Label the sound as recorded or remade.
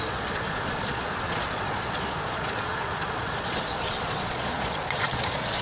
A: remade